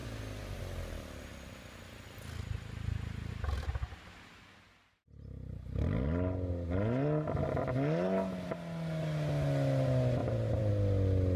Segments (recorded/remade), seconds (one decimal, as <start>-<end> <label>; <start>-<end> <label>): 0.0-0.6 remade; 0.6-10.2 recorded; 10.2-10.7 remade; 10.7-11.4 recorded